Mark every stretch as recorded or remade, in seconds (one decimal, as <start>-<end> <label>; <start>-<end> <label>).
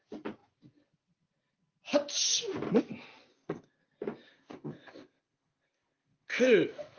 0.0-3.3 recorded; 3.3-3.8 remade; 3.8-4.3 recorded; 4.3-7.0 remade